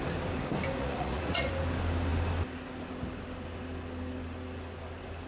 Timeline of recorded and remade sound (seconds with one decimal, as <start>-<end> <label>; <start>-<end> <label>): 0.0-0.8 recorded; 0.8-1.5 remade; 1.5-5.3 recorded

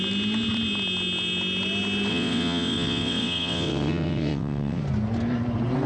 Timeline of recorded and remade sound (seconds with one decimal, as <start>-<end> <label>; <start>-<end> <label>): 0.0-2.1 recorded; 2.1-4.8 remade; 4.8-5.9 recorded

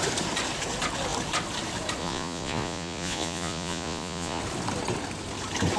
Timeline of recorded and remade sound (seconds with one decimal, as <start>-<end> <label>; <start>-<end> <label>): 0.0-2.0 recorded; 2.0-4.4 remade; 4.4-5.8 recorded

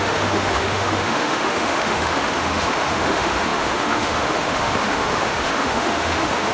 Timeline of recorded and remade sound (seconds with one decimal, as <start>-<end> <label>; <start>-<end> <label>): 0.0-6.5 remade